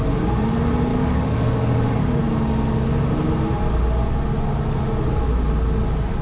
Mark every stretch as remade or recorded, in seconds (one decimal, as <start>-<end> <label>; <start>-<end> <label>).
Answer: 0.0-0.9 recorded; 0.9-1.9 remade; 1.9-6.2 recorded